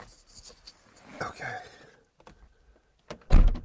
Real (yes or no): yes